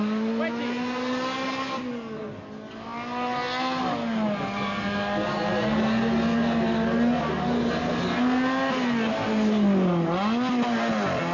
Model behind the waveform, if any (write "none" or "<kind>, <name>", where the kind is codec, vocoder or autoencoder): none